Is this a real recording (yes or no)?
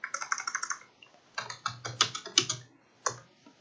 yes